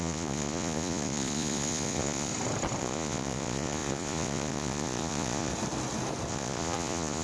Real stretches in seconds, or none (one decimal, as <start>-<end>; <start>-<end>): 2.3-2.8; 5.5-6.3